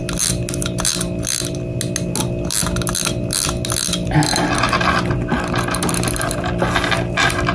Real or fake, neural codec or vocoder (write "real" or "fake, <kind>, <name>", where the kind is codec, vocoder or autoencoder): real